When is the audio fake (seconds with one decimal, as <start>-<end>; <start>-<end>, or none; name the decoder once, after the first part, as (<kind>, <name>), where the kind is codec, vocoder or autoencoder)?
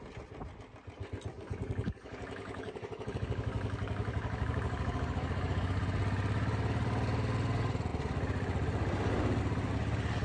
1.3-5.8 (codec, DAC)